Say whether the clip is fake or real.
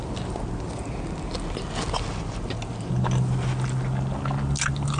real